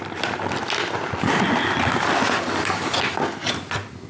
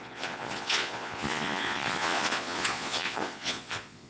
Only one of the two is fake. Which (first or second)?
second